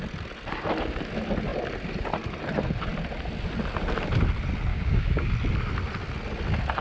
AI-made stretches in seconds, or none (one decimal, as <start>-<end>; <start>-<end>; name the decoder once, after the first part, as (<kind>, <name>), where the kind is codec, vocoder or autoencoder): 4.7-5.3 (codec, DAC)